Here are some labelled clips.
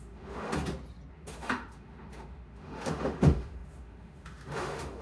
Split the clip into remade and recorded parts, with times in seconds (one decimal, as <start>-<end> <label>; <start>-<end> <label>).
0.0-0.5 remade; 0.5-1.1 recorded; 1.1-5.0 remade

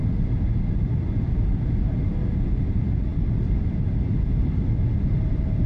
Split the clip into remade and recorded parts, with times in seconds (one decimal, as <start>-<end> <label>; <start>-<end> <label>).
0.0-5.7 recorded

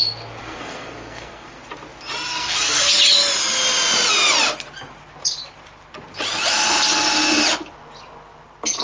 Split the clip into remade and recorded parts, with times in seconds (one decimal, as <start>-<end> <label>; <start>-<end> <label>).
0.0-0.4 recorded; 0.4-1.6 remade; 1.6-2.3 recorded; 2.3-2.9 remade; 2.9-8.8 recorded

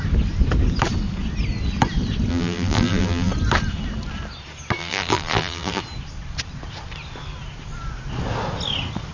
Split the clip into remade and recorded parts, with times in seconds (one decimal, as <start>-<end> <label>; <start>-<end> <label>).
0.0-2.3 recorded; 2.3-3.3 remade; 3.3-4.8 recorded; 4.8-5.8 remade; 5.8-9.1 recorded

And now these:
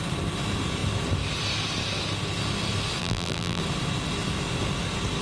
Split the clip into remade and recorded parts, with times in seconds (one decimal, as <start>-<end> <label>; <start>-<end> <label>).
0.0-3.0 recorded; 3.0-3.6 remade; 3.6-5.2 recorded

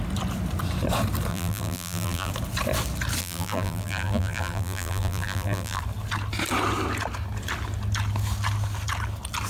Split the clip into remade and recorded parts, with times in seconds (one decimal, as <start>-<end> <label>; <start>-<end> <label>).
0.0-1.3 recorded; 1.3-2.3 remade; 2.3-3.2 recorded; 3.2-5.8 remade; 5.8-9.5 recorded

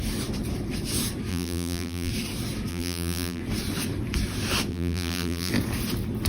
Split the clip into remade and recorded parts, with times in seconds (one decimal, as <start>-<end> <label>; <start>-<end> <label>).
0.0-1.3 recorded; 1.3-2.1 remade; 2.1-2.7 recorded; 2.7-3.4 remade; 3.4-4.7 recorded; 4.7-5.5 remade; 5.5-6.3 recorded